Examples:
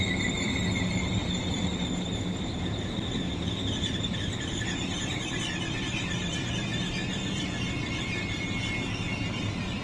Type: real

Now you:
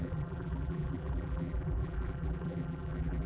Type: fake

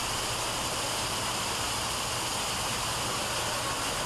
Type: real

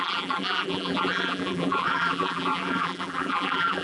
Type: fake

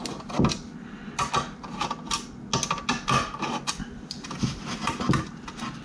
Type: real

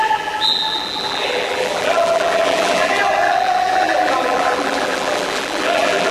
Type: fake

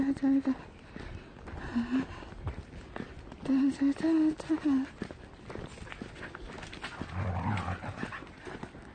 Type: real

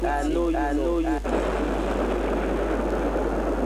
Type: real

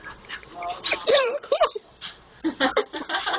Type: fake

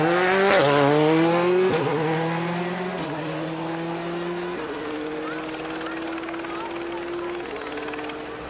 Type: real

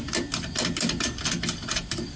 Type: real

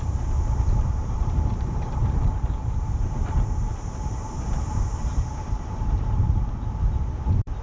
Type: fake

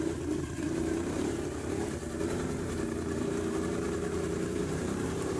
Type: fake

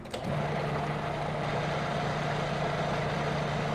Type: real